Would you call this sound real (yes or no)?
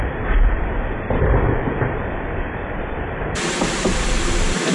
no